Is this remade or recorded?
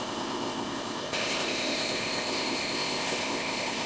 remade